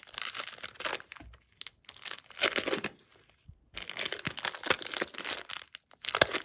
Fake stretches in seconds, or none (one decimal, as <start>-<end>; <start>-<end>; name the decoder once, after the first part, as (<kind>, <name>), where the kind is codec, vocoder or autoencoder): none